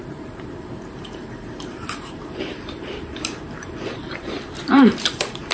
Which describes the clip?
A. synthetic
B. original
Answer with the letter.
A